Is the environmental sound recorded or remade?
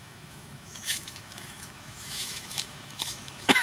remade